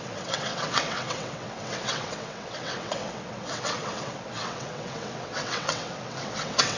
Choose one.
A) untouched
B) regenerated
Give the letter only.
B